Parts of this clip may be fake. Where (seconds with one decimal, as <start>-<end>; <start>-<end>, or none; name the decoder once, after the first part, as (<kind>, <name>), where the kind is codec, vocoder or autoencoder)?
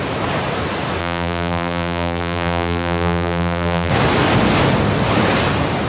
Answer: 1.0-3.9 (vocoder, BigVGAN v2)